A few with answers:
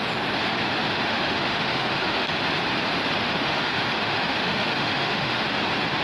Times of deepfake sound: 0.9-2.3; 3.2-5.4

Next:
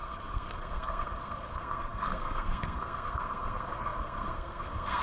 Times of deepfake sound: 0.0-5.0

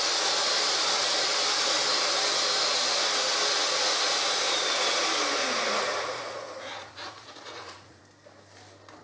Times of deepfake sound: 5.4-8.0

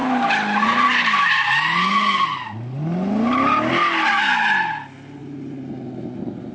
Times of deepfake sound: 5.2-5.7

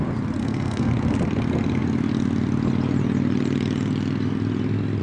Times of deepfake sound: 0.4-0.9

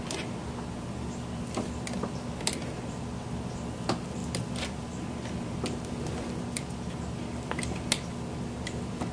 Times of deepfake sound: none